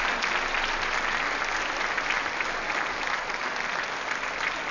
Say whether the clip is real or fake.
real